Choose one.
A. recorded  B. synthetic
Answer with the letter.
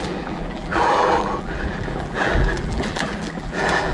B